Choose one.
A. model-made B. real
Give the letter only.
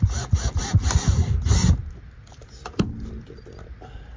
B